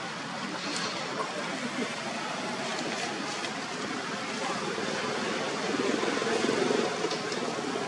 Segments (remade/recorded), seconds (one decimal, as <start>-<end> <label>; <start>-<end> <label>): 0.0-7.9 recorded